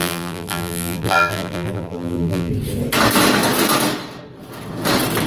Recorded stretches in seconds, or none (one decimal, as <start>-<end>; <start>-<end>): 2.5-5.3